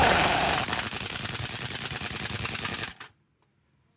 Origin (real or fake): real